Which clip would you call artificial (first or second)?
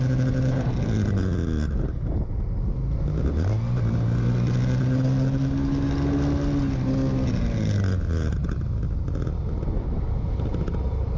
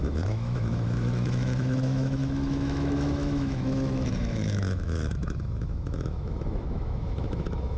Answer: second